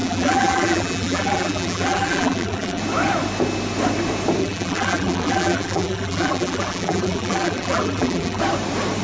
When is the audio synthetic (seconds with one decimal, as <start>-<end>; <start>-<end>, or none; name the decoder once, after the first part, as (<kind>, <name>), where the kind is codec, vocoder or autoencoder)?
0.0-2.8 (vocoder, BigVGAN v2); 4.4-8.4